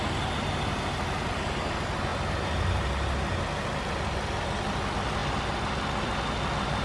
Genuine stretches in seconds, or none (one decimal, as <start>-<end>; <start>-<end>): 0.0-6.8